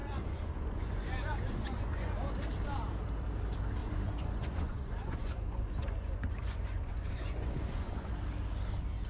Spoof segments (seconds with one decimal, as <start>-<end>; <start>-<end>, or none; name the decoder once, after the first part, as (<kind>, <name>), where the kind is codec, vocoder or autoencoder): 0.0-2.3 (vocoder, Vocos); 3.8-8.1